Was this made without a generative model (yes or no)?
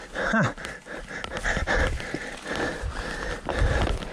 yes